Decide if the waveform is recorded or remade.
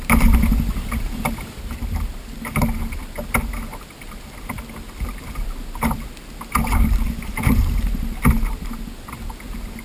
recorded